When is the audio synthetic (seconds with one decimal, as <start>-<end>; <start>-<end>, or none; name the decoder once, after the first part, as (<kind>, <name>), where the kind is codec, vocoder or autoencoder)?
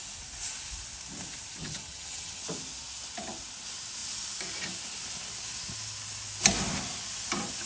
1.6-2.4 (vocoder, HiFi-GAN)